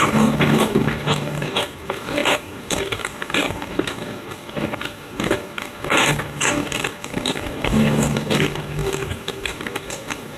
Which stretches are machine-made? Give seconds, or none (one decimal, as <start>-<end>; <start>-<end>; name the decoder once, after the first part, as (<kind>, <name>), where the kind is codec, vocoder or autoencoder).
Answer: 0.0-10.4 (codec, DAC)